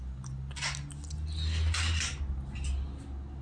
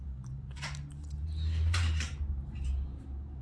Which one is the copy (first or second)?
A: second